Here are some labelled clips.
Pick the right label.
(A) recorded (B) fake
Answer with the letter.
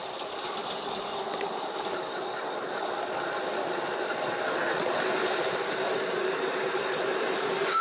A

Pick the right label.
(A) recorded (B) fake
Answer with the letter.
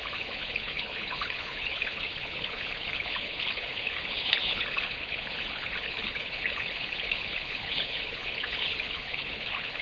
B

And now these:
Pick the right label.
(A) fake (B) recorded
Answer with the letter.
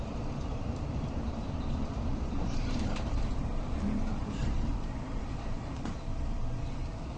A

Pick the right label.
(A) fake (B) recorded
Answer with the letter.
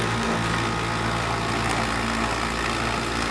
B